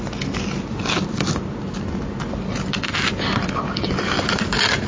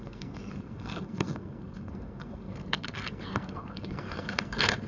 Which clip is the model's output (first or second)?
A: second